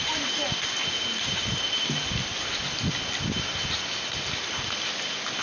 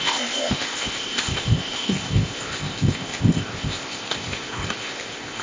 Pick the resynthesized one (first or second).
second